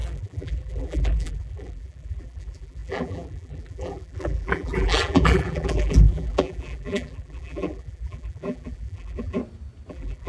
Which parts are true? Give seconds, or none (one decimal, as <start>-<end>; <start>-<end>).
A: 9.4-9.9